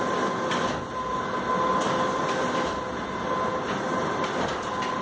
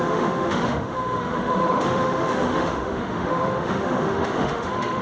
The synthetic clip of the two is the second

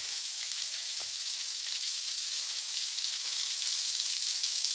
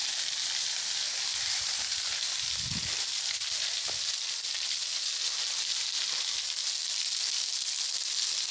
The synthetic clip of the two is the first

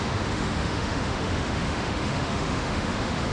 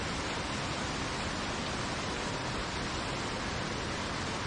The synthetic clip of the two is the first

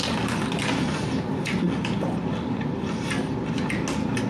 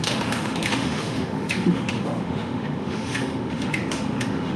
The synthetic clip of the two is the second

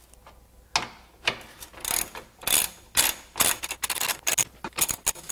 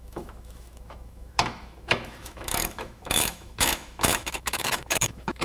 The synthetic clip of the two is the second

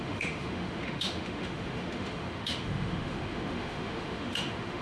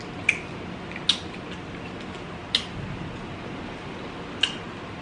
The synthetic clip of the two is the first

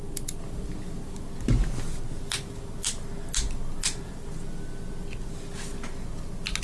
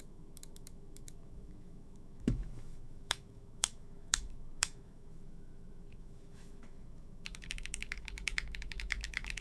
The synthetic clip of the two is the second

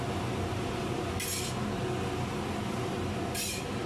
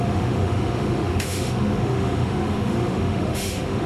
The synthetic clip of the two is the second